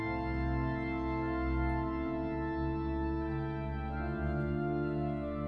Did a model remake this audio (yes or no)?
no